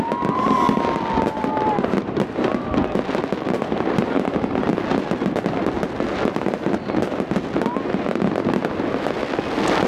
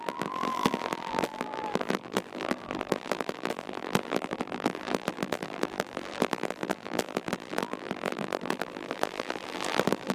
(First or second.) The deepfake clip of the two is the second